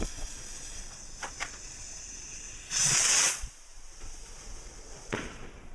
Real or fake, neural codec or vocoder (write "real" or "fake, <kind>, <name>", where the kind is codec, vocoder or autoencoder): fake, vocoder, Vocos